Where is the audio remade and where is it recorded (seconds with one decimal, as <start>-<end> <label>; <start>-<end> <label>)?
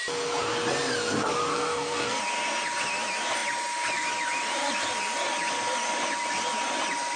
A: 0.0-1.5 recorded; 1.5-2.2 remade; 2.2-7.2 recorded